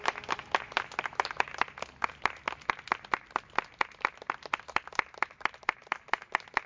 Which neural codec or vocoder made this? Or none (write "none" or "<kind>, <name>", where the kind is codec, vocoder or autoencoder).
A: none